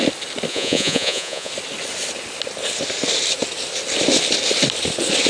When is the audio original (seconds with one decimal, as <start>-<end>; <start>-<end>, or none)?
0.0-0.5; 1.5-5.3